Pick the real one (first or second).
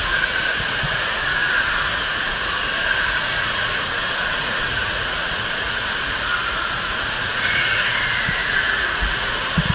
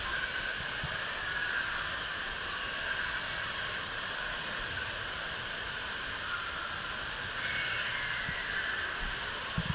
second